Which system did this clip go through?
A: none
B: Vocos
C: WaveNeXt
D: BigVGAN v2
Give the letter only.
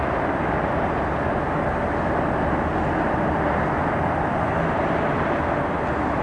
A